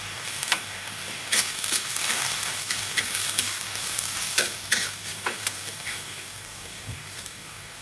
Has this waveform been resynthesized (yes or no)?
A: yes